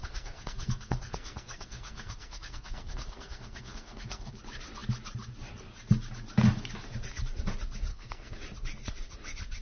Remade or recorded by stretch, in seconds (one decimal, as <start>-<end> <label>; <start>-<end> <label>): 0.0-4.3 remade; 4.3-7.9 recorded; 7.9-8.4 remade; 8.4-9.6 recorded